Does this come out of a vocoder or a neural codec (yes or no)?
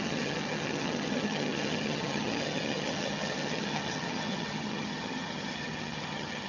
yes